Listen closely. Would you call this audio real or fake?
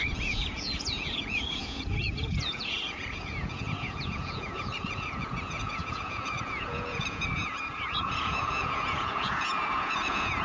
fake